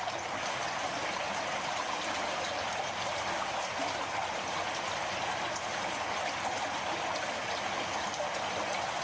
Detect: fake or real real